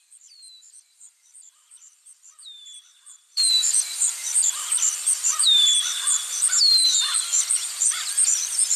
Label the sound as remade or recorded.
remade